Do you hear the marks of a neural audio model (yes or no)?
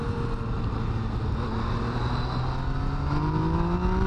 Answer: no